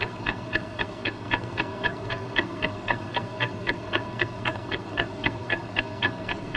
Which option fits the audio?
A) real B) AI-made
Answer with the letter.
B